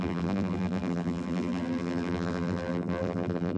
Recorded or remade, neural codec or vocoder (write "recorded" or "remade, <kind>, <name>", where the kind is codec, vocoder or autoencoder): remade, vocoder, BigVGAN v2